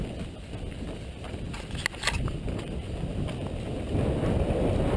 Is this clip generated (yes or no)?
no